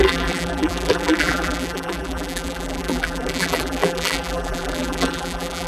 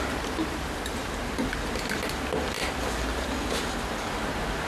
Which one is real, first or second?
second